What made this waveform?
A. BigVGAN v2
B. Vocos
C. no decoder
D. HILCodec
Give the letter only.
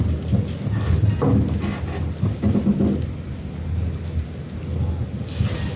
C